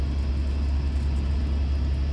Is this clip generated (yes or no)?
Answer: no